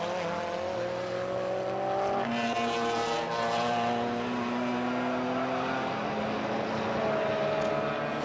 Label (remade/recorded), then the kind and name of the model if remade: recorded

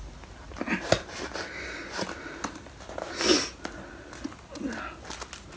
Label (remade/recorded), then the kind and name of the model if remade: recorded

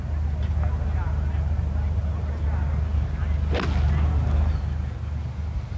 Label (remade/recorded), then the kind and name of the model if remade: recorded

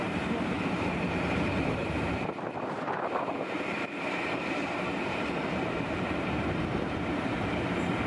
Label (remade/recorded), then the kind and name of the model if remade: remade, vocoder, BigVGAN v2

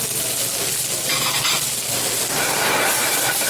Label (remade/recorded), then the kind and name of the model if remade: recorded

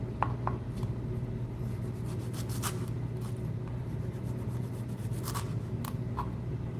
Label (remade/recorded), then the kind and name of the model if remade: recorded